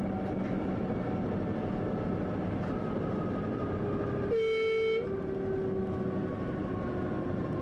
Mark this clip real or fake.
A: real